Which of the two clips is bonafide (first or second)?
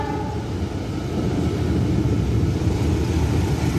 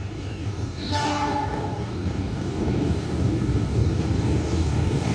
first